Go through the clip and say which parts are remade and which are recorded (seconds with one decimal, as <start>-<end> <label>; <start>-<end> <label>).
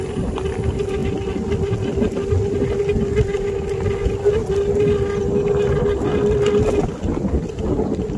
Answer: 0.0-8.2 recorded